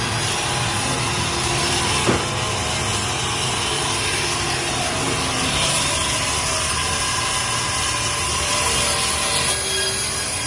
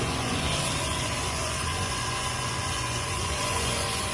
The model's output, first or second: second